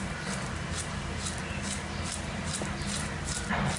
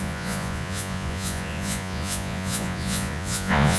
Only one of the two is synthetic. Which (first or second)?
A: second